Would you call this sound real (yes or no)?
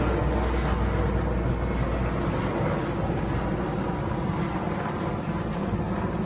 yes